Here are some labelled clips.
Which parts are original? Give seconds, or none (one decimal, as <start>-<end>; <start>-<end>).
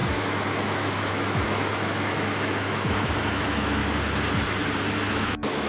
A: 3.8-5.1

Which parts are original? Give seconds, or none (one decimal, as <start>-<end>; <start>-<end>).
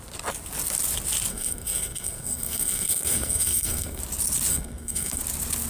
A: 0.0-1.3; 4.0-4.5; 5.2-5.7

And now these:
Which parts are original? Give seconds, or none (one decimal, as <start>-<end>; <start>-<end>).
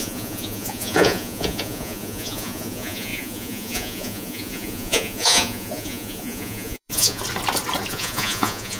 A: 7.2-7.9